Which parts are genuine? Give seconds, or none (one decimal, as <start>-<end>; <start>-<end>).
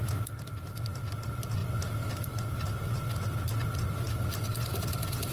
0.0-5.3